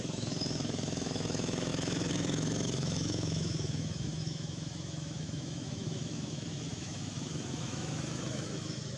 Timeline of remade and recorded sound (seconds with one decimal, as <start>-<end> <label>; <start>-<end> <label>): 0.0-9.0 remade